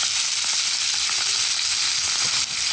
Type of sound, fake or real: real